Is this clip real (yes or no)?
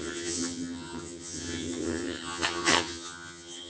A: no